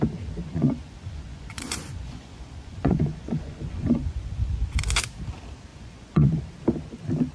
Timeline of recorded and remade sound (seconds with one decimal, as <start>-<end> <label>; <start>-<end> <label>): 0.0-0.4 recorded; 0.4-4.8 remade; 4.8-5.7 recorded; 5.7-6.4 remade; 6.4-7.3 recorded